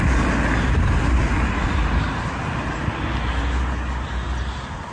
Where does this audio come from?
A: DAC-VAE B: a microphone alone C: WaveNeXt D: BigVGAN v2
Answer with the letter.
B